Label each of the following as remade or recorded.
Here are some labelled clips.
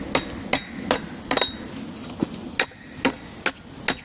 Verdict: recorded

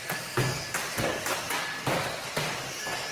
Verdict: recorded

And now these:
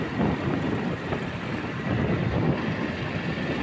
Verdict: recorded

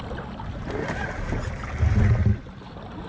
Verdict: recorded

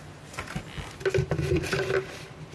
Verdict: recorded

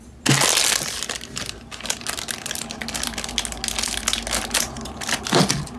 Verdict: recorded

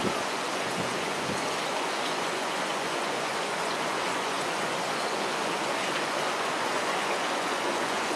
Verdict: remade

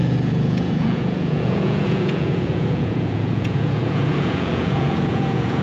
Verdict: remade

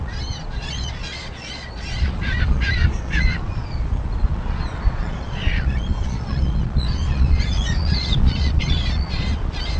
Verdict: remade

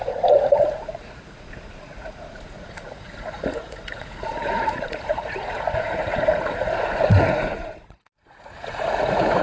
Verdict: remade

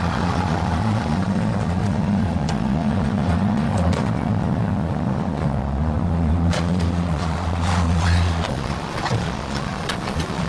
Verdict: remade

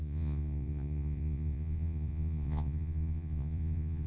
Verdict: remade